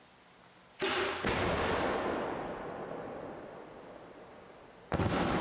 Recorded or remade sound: recorded